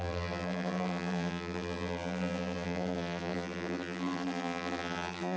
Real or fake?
fake